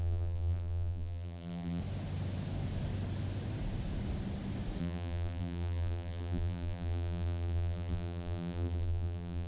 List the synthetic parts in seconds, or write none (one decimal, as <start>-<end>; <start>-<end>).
0.0-1.8; 4.8-9.5